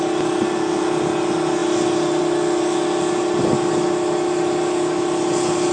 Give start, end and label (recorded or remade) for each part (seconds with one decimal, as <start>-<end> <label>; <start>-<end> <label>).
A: 0.0-5.7 recorded